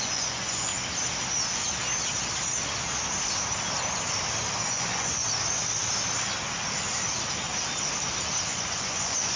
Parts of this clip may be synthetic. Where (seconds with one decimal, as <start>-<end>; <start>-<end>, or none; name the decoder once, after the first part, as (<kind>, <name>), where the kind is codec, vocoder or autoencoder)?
0.0-0.7 (vocoder, Vocos); 4.7-5.2; 8.5-9.4